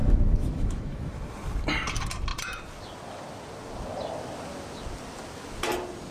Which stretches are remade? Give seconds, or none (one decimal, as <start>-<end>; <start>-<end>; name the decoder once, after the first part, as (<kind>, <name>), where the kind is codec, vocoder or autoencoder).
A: 0.0-1.1 (autoencoder, DAC-VAE)